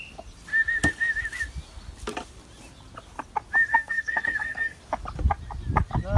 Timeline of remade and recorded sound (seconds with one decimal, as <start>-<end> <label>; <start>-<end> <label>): 0.0-3.7 recorded; 3.7-4.8 remade; 4.8-6.2 recorded